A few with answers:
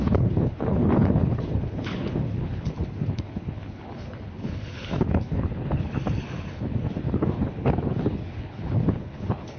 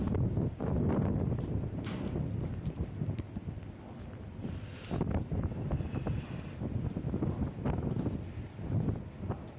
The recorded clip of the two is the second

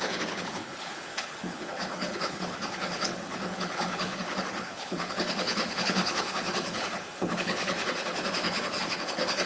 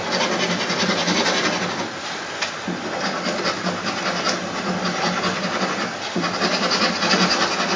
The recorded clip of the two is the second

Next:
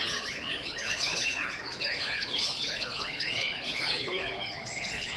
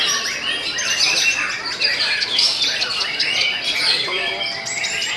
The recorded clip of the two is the second